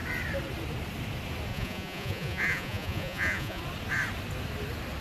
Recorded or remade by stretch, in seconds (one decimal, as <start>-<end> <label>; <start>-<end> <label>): 0.0-1.5 recorded; 1.5-3.6 remade; 3.6-5.0 recorded